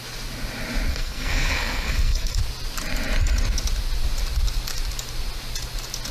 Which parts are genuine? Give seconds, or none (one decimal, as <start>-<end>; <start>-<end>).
0.0-0.9; 2.3-6.1